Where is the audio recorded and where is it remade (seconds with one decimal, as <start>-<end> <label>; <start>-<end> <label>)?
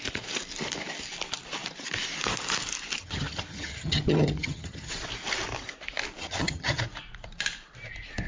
0.0-3.0 recorded; 3.0-4.9 remade; 4.9-6.2 recorded; 6.2-6.8 remade; 6.8-8.3 recorded